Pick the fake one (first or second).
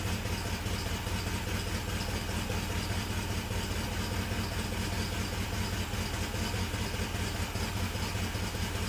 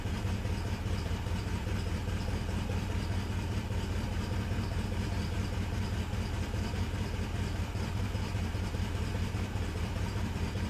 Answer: second